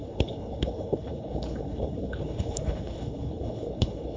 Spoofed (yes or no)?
yes